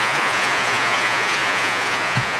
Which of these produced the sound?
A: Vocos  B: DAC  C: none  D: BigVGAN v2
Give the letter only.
A